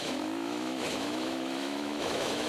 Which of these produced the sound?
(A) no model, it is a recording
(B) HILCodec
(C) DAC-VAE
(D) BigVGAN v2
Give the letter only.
C